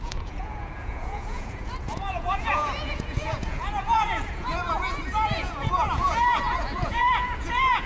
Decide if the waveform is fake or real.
fake